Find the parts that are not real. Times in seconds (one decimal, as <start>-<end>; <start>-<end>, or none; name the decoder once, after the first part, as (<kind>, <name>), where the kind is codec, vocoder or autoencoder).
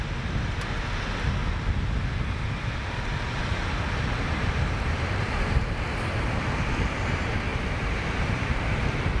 3.1-6.7 (vocoder, BigVGAN v2); 7.5-9.2